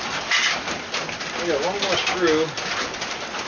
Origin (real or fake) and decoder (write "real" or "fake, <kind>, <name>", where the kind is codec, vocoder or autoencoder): real